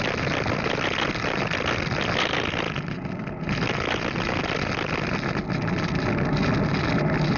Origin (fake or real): real